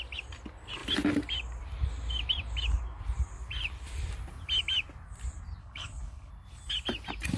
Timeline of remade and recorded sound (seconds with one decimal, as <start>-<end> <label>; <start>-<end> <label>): 0.0-5.6 recorded; 5.6-6.3 remade; 6.3-7.4 recorded